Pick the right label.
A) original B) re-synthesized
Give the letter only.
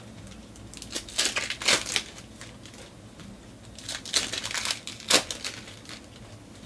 A